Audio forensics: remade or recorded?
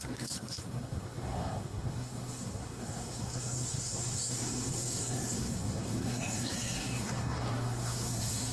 remade